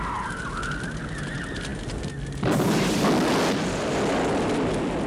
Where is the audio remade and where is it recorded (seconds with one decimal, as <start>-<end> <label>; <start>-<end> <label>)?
0.0-5.1 recorded